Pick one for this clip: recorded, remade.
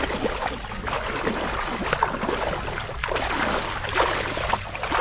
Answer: recorded